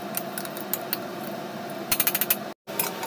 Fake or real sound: real